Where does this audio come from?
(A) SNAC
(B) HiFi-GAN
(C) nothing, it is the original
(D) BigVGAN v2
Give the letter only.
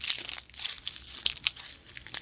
C